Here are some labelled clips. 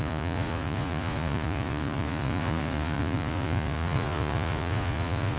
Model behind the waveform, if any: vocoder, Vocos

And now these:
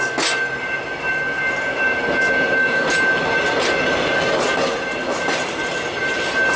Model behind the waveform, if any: none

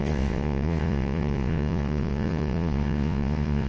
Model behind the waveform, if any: vocoder, Vocos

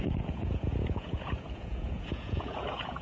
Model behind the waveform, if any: vocoder, Vocos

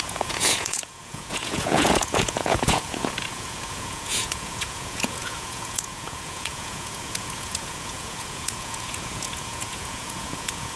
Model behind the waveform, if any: vocoder, Vocos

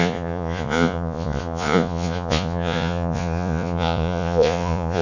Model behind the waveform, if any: vocoder, Vocos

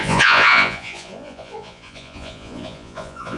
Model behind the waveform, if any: vocoder, Vocos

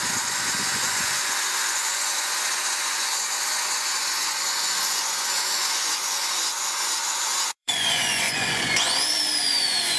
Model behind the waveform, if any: vocoder, Vocos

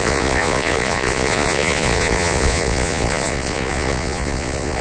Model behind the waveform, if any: vocoder, Vocos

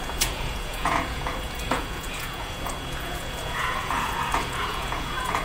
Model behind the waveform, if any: vocoder, Vocos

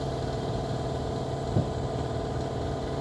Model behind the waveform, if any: none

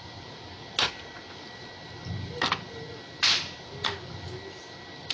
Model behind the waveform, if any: none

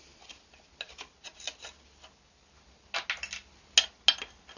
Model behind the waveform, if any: none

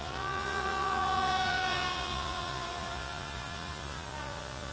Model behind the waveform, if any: vocoder, Vocos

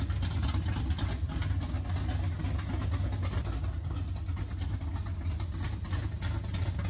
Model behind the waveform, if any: none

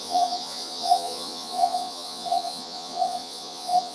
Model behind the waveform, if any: vocoder, Vocos